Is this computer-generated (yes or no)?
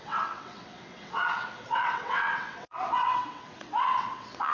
yes